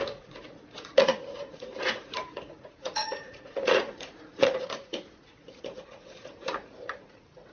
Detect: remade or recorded remade